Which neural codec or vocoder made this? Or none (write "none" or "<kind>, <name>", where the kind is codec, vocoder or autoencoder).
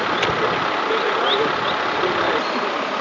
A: none